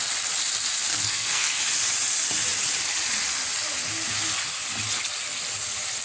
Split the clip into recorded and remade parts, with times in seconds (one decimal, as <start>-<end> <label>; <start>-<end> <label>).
0.0-0.9 recorded; 0.9-1.6 remade; 1.6-6.0 recorded